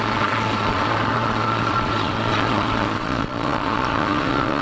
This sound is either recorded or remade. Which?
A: remade